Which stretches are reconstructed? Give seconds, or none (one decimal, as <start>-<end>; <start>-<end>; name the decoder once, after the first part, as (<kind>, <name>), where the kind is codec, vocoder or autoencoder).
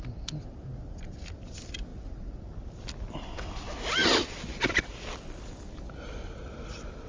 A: none